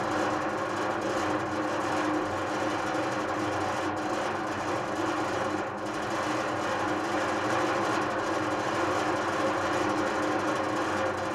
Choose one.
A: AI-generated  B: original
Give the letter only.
B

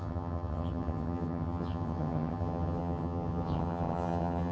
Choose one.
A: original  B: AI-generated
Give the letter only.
B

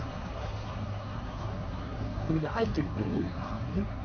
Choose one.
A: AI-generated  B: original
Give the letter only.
A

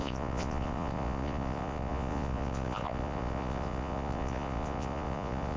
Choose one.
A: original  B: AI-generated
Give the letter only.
B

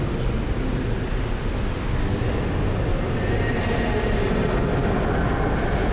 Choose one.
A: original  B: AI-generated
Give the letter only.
A